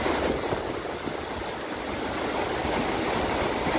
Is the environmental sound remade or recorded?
recorded